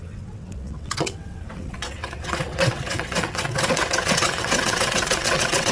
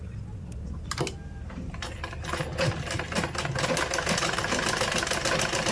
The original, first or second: second